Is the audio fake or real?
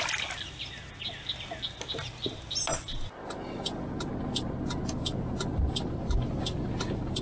real